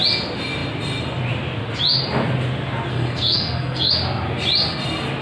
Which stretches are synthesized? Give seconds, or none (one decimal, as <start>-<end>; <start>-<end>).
2.9-3.9

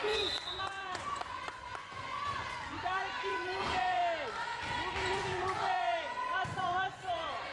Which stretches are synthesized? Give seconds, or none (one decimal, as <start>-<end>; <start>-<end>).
0.0-4.0; 5.1-7.5

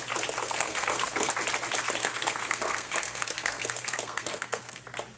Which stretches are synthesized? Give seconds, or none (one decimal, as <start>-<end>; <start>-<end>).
0.4-1.3; 2.0-4.8

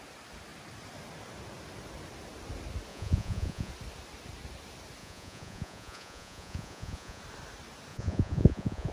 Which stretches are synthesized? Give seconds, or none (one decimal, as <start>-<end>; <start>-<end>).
2.9-3.7; 5.0-7.2; 7.9-8.9